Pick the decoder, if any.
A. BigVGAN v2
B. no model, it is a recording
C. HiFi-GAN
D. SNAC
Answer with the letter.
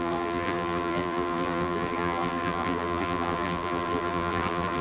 A